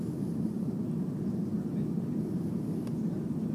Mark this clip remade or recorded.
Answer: recorded